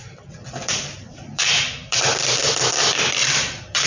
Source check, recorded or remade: remade